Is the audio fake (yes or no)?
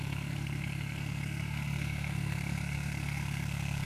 yes